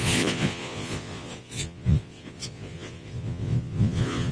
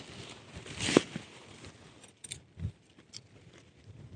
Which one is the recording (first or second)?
second